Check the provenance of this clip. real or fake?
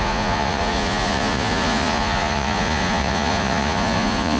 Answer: fake